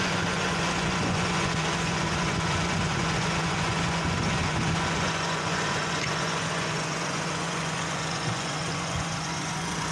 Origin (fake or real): fake